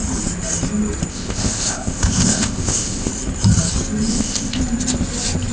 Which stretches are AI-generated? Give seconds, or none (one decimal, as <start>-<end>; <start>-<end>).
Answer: 1.1-3.1; 4.1-4.6